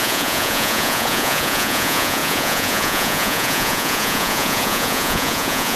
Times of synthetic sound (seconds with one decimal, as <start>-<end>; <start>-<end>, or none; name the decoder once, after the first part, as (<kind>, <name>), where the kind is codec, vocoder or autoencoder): 0.0-5.8 (vocoder, Vocos)